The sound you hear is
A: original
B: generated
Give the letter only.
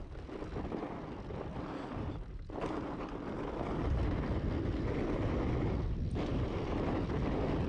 A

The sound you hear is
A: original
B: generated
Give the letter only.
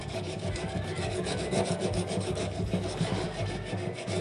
B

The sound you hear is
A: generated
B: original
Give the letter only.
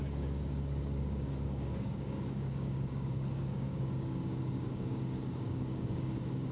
A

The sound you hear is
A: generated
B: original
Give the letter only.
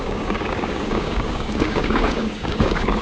A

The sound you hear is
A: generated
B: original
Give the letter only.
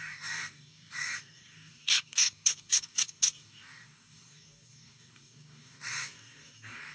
A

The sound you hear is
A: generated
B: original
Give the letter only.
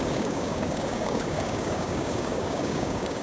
A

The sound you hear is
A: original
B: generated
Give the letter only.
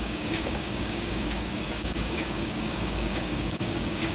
B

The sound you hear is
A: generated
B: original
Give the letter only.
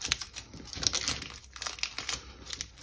B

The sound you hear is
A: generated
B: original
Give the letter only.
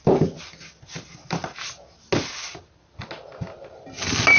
B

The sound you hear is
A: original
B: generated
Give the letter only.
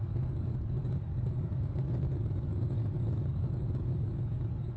B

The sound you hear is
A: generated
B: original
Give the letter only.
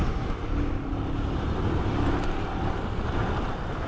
B